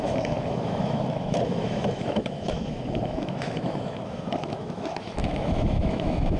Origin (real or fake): fake